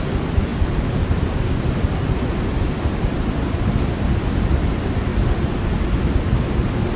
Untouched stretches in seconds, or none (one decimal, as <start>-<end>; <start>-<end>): 0.0-7.0

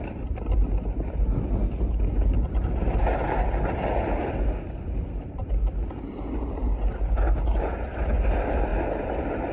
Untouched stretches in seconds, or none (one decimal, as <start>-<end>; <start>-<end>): 0.0-9.5

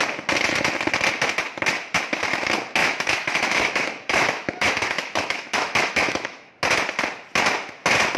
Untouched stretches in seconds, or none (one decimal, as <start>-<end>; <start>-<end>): 0.0-2.8; 6.5-8.2

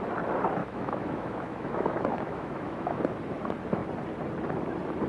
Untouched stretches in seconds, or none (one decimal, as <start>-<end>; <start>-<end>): 0.0-0.6; 3.0-5.1

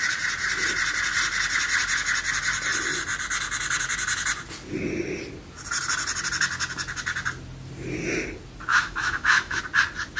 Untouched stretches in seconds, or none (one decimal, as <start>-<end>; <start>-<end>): 0.0-8.7; 9.6-10.2

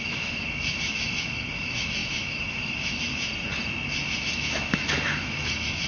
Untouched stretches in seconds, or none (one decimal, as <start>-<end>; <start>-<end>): 3.1-4.2

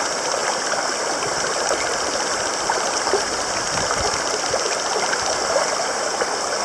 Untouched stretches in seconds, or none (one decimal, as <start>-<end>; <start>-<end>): 0.0-6.6

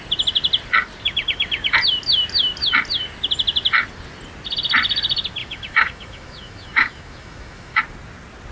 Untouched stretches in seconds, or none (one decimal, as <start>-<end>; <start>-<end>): 0.0-5.4; 7.8-8.5